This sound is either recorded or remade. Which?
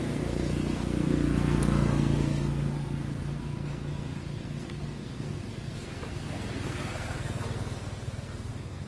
remade